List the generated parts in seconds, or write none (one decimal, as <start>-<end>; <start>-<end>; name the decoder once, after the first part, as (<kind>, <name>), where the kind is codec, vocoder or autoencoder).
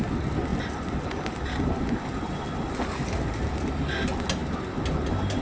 0.5-3.7 (vocoder, BigVGAN v2)